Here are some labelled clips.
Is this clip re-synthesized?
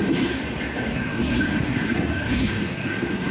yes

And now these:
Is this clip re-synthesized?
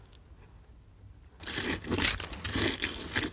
no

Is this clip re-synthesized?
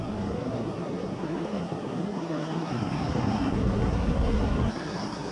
yes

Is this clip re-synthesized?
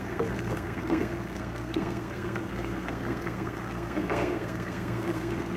yes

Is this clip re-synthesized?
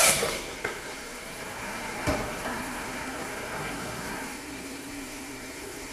yes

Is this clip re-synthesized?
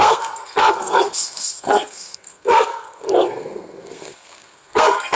yes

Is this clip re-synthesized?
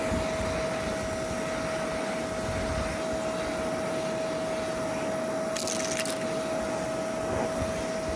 no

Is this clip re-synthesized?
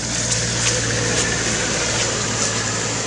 no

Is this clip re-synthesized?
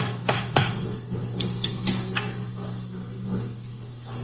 yes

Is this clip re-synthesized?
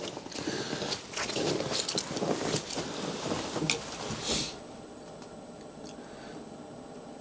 no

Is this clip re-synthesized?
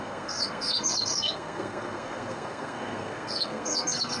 yes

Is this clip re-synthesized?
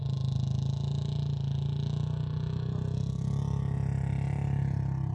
no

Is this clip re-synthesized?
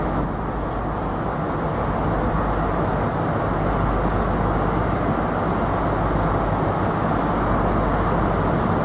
no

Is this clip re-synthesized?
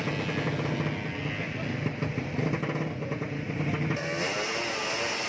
no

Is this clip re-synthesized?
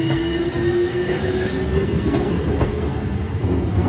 yes